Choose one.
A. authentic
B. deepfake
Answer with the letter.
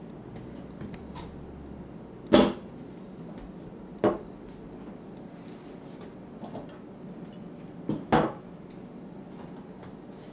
A